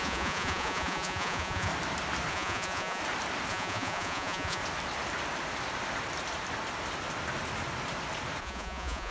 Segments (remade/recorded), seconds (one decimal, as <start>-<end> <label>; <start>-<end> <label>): 0.0-1.7 remade; 1.7-2.3 recorded; 2.3-3.0 remade; 3.0-3.5 recorded; 3.5-4.6 remade; 4.6-8.4 recorded; 8.4-9.1 remade